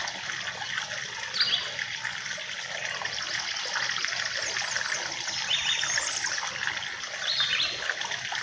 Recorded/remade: recorded